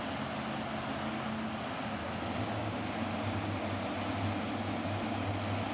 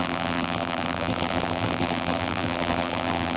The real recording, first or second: first